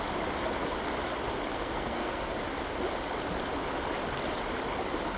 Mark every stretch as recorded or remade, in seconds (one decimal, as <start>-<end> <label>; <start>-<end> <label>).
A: 0.0-1.5 recorded; 1.5-2.3 remade; 2.3-5.2 recorded